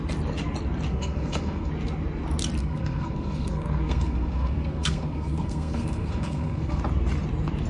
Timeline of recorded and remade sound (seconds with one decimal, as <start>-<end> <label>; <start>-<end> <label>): 0.0-0.9 recorded; 0.9-1.7 remade; 1.7-2.6 recorded; 2.6-6.8 remade; 6.8-7.7 recorded